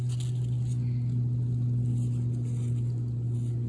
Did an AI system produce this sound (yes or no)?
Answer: no